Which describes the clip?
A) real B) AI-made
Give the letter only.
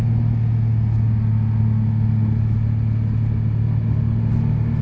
A